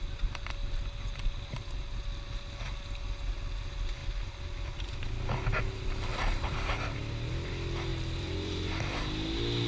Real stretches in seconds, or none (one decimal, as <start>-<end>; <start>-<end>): 0.0-4.0; 4.9-6.1; 7.5-7.9; 9.0-9.7